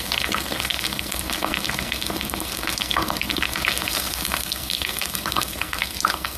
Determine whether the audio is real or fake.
fake